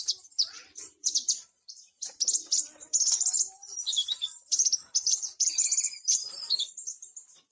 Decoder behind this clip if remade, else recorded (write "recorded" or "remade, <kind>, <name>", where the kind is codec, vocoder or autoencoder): remade, vocoder, BigVGAN v2